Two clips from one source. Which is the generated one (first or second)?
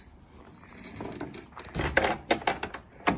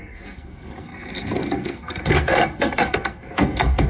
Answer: second